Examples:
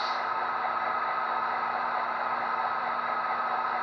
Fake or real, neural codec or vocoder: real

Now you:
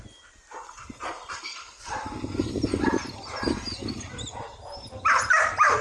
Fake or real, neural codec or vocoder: real